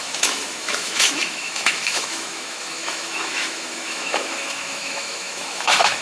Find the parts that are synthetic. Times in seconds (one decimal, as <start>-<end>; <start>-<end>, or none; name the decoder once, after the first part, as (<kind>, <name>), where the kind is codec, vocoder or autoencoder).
0.0-6.0 (autoencoder, DAC-VAE)